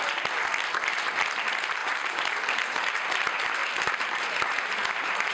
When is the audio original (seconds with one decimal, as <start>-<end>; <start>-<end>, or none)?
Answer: 0.0-1.8; 3.0-3.6